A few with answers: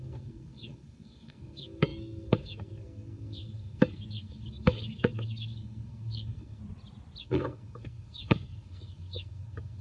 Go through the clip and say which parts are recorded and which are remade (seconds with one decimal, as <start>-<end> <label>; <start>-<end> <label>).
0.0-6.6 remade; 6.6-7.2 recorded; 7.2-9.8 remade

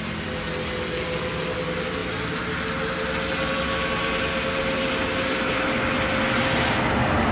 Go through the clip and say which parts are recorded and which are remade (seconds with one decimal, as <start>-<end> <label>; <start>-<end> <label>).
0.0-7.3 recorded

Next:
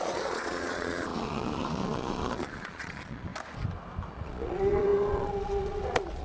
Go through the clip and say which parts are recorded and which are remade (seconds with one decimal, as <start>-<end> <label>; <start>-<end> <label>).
0.0-3.3 remade; 3.3-4.1 recorded; 4.1-6.2 remade

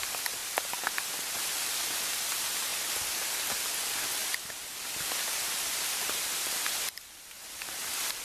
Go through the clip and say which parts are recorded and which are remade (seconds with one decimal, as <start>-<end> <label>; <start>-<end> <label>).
0.0-0.4 recorded; 0.4-1.3 remade; 1.3-2.7 recorded; 2.7-3.7 remade; 3.7-4.2 recorded; 4.2-8.2 remade